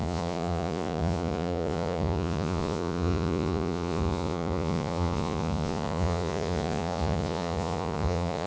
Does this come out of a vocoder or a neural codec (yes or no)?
yes